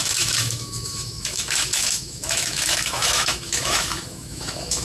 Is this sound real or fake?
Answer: fake